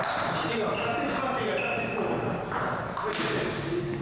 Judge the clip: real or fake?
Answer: real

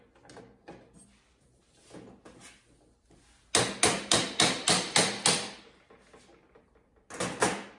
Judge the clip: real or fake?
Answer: real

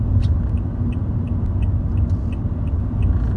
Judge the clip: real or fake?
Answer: real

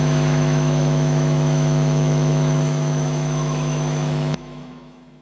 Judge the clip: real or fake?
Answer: fake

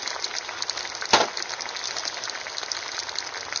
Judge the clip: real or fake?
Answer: real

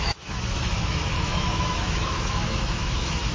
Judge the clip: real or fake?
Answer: fake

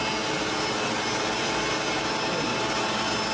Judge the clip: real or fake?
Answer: real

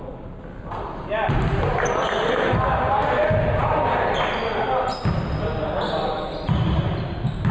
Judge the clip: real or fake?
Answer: real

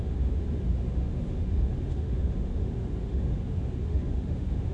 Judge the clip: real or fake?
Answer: fake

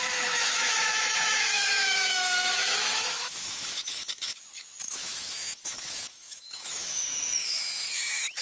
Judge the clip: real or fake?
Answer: fake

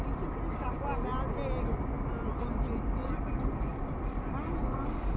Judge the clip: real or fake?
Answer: real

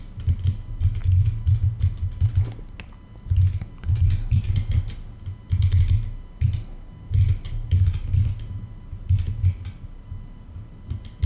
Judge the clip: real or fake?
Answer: real